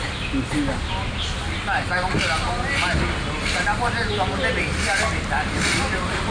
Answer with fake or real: real